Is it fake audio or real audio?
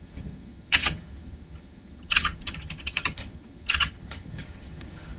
fake